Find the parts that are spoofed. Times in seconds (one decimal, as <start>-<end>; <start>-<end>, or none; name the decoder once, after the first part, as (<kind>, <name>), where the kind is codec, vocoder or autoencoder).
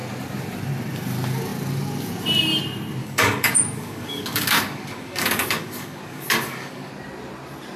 3.0-6.9 (codec, DAC)